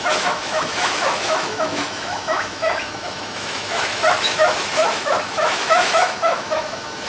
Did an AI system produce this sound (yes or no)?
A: yes